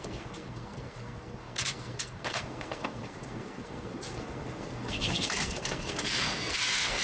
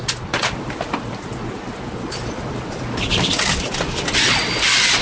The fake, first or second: first